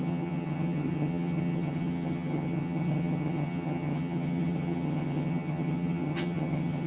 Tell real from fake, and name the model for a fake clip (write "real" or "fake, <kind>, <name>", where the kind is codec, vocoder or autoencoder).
fake, vocoder, HiFi-GAN